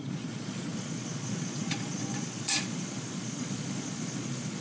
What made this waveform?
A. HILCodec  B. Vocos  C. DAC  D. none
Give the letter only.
B